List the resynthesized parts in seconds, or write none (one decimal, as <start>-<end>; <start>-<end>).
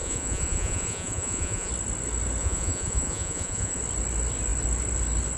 0.0-1.7; 2.4-3.8